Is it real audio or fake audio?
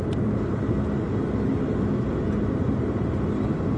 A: real